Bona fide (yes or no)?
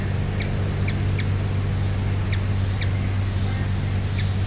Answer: yes